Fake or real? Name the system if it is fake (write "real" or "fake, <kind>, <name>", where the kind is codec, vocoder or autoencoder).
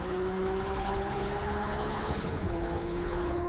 fake, codec, HILCodec